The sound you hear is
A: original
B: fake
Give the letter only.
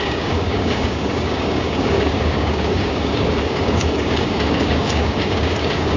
B